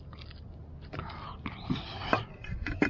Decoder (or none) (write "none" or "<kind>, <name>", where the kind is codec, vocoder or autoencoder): none